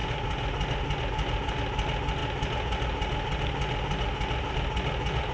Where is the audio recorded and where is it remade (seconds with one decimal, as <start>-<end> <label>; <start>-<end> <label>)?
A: 0.0-5.3 recorded